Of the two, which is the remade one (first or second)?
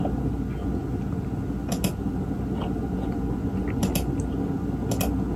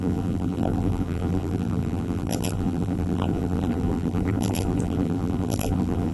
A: second